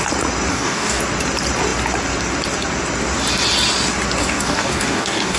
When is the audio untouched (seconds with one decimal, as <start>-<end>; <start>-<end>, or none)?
0.0-0.5; 1.0-4.2